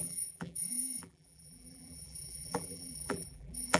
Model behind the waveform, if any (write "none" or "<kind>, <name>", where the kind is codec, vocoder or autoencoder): vocoder, BigVGAN v2